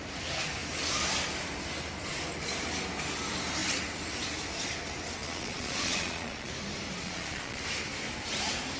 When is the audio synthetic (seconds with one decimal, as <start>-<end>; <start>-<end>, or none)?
5.2-6.5; 7.0-7.6